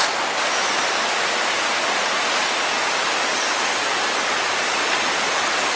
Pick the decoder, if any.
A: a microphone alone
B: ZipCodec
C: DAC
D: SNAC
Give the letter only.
A